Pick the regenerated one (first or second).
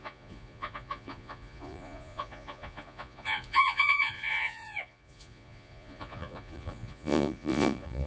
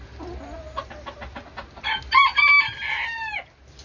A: first